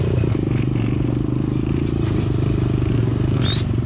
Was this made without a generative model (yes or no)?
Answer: yes